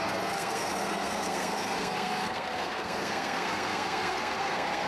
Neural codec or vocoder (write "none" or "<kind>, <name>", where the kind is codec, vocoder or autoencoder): codec, SNAC